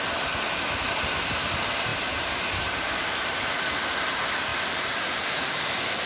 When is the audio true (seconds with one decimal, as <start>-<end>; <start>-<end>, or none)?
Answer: 0.0-1.9; 3.7-6.1